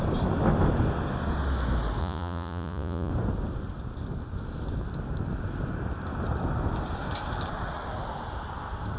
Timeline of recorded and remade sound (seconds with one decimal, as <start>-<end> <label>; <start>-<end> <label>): 0.0-2.0 recorded; 2.0-3.1 remade; 3.1-9.0 recorded